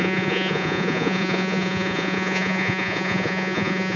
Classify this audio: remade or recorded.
remade